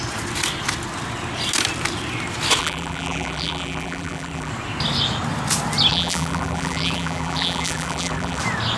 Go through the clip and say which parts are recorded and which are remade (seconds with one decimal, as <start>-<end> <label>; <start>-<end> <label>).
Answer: 0.0-2.6 recorded; 2.6-4.5 remade; 4.5-5.9 recorded; 5.9-8.4 remade; 8.4-8.8 recorded